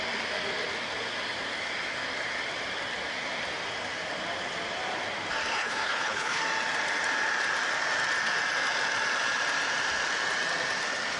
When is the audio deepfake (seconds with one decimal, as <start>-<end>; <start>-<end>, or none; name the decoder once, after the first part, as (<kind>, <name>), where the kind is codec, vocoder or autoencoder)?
5.5-6.4 (codec, HILCodec)